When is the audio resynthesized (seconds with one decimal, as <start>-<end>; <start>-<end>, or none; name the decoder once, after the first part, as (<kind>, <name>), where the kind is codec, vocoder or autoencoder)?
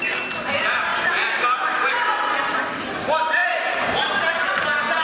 none